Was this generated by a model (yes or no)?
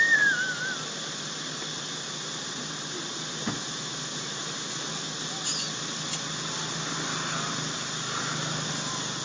no